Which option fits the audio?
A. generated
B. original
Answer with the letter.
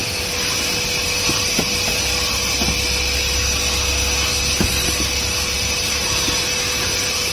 B